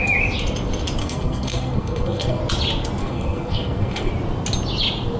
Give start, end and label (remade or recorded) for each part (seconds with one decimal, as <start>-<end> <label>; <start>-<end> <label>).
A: 0.0-1.0 recorded; 1.0-2.4 remade; 2.4-3.0 recorded; 3.0-4.1 remade; 4.1-5.2 recorded